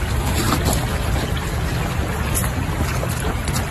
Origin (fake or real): real